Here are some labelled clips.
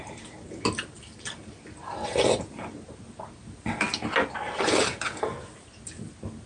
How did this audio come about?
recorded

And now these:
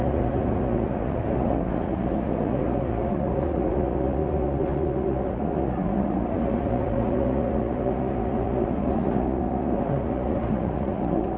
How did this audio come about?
remade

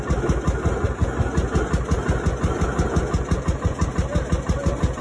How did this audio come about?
recorded